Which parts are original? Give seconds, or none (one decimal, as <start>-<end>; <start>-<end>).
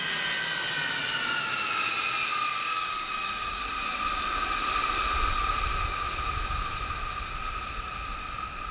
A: 0.0-2.6; 3.6-8.7